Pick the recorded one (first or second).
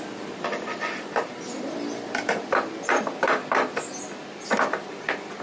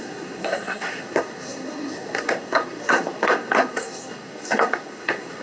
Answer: first